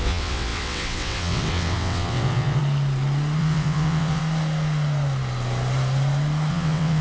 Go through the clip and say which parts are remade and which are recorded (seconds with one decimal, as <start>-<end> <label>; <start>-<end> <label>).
0.0-2.6 remade; 2.6-3.4 recorded; 3.4-4.2 remade; 4.2-6.5 recorded; 6.5-7.0 remade